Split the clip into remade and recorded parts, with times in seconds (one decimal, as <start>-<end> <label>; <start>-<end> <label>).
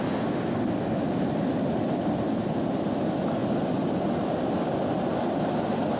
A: 0.0-6.0 recorded